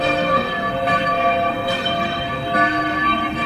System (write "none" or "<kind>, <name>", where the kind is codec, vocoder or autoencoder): codec, SNAC